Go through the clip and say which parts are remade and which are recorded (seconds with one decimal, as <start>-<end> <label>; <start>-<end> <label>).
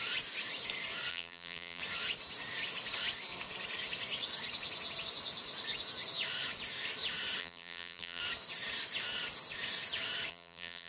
0.0-1.1 recorded; 1.1-1.8 remade; 1.8-7.4 recorded; 7.4-8.2 remade; 8.2-10.3 recorded; 10.3-10.9 remade